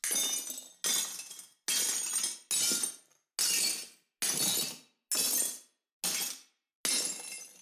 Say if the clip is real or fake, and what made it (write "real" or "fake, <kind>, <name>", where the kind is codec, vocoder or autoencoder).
real